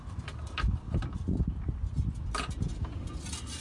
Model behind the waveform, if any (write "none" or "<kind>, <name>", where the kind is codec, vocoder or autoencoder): none